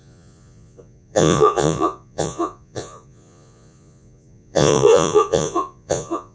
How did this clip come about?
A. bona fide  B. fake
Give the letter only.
B